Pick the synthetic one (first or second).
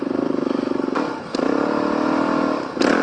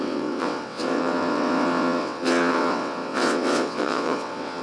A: second